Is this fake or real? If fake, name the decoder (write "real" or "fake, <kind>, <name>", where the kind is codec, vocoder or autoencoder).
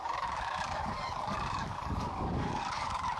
fake, codec, DAC